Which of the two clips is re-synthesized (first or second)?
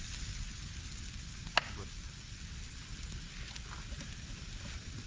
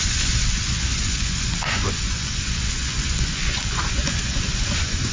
second